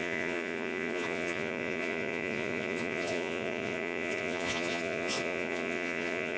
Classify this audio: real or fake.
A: fake